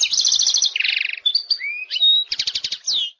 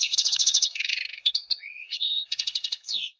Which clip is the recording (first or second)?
first